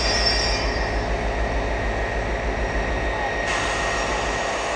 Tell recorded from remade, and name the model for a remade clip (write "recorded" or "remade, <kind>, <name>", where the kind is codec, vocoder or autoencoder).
recorded